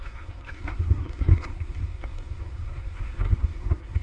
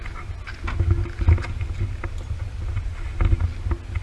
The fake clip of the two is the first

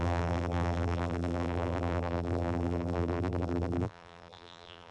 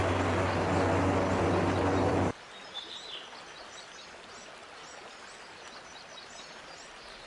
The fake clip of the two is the first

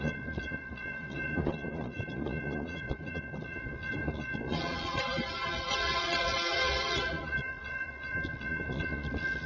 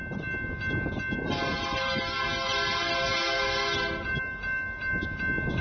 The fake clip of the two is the first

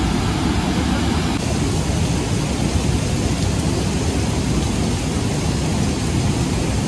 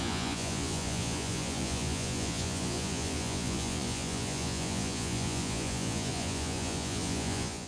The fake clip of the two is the second